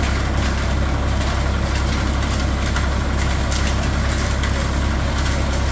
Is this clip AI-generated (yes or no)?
no